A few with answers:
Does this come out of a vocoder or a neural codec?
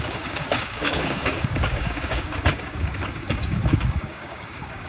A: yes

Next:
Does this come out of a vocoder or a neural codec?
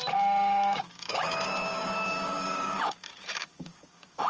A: yes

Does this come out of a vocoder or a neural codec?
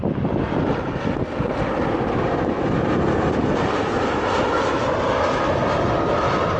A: no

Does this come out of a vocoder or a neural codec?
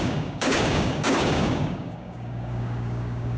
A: yes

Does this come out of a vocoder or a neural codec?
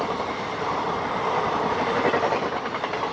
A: no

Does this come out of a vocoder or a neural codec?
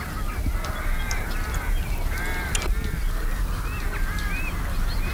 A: no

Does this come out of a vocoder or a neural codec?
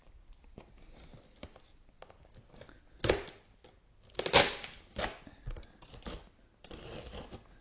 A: no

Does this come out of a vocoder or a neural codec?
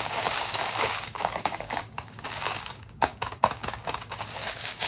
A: yes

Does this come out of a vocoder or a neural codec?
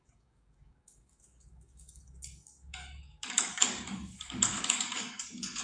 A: yes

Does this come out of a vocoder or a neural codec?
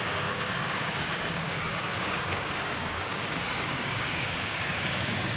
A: yes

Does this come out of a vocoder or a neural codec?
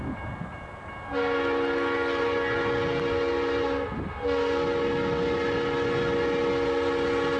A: no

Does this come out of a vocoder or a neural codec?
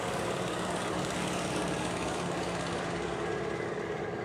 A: yes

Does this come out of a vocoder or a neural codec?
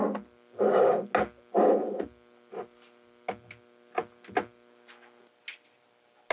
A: no